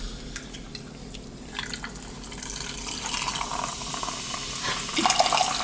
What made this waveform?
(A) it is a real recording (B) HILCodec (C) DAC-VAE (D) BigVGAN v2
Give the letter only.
A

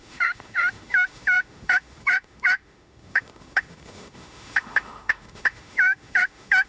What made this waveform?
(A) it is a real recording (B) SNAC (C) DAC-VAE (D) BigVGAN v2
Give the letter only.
C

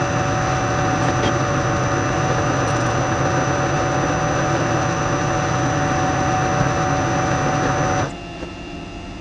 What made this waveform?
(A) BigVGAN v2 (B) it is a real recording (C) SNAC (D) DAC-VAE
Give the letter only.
B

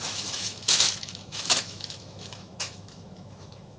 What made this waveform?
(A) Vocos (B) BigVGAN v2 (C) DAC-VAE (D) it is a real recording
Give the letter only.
C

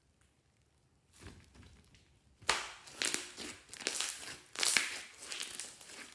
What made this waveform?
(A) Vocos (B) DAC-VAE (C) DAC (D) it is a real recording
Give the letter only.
D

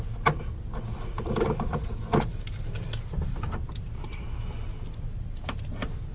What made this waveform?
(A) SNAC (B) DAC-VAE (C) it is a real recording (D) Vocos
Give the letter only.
C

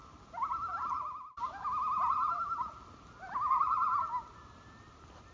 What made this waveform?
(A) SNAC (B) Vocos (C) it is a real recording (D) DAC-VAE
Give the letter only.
C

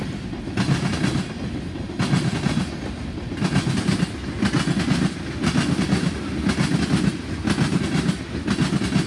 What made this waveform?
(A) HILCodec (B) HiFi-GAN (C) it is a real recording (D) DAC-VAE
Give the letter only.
C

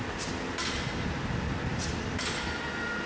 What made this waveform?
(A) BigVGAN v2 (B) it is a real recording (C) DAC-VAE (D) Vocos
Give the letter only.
B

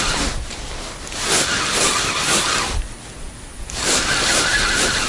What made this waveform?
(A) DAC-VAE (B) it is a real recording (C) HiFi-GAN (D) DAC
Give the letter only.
B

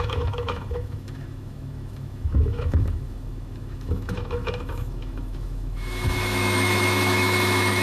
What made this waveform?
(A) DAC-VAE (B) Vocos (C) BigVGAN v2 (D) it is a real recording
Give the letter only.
A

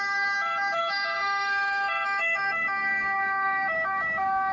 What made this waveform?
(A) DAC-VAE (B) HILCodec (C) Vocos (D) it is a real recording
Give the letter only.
A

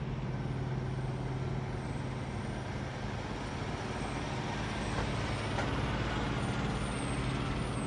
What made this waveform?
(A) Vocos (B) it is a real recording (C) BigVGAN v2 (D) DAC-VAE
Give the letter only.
B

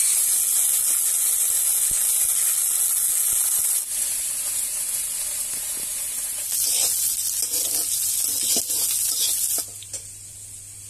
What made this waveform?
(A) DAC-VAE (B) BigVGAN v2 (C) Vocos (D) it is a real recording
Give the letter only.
D